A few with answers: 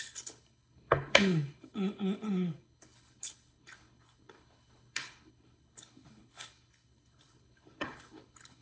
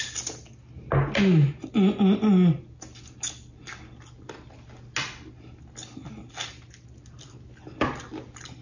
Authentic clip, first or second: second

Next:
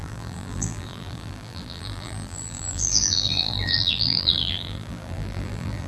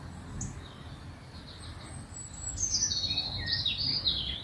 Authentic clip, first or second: second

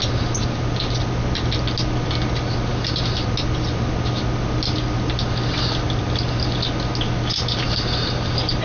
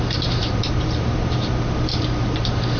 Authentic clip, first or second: first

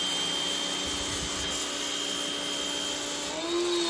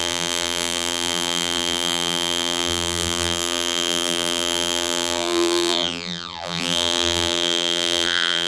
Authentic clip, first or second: first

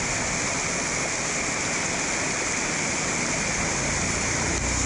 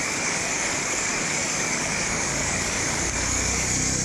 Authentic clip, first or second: first